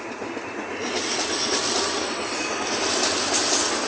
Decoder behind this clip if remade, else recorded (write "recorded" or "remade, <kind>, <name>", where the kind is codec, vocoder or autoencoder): recorded